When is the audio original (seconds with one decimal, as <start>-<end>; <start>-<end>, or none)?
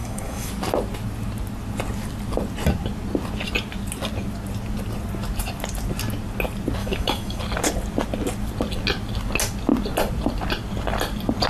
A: 0.5-6.8; 7.4-11.5